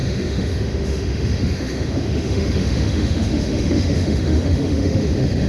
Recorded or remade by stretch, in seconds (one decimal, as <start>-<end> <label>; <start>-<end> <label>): 0.0-5.5 remade

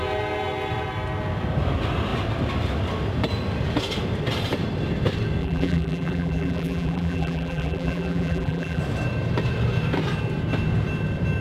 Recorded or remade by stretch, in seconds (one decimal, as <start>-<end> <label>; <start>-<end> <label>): 0.0-5.4 recorded; 5.4-8.8 remade; 8.8-11.4 recorded

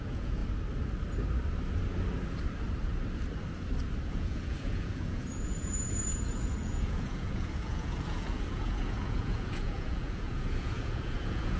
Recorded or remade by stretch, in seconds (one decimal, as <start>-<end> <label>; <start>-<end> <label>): 0.0-0.4 remade; 0.4-4.1 recorded; 4.1-11.6 remade

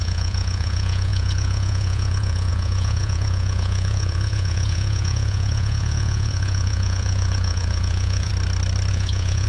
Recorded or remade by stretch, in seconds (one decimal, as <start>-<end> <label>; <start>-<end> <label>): 0.0-8.3 remade; 8.3-8.9 recorded; 8.9-9.5 remade

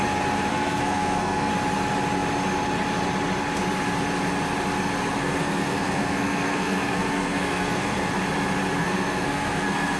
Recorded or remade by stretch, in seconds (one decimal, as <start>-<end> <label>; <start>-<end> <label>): 0.0-0.5 recorded; 0.5-1.5 remade; 1.5-5.2 recorded; 5.2-8.1 remade; 8.1-8.8 recorded; 8.8-10.0 remade

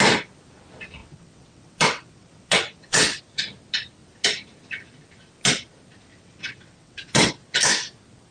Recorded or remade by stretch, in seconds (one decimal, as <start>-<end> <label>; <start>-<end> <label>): 0.0-1.0 recorded; 1.0-3.2 remade; 3.2-6.1 recorded; 6.1-7.3 remade; 7.3-8.3 recorded

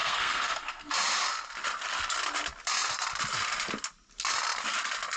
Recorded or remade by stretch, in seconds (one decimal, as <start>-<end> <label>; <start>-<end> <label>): 0.0-0.9 remade; 0.9-5.2 recorded